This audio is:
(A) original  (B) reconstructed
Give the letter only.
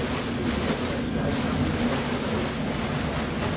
A